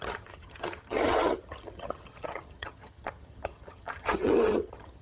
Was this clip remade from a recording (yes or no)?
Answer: yes